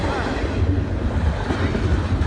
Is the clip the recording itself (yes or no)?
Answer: yes